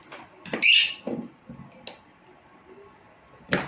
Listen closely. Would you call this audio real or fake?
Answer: real